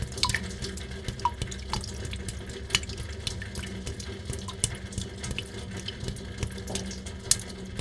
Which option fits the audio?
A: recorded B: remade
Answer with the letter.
A